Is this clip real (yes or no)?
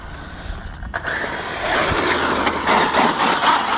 yes